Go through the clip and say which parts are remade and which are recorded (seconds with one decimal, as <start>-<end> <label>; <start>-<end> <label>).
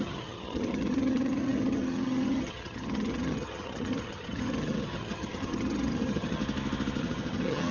0.0-6.4 remade; 6.4-7.0 recorded; 7.0-7.7 remade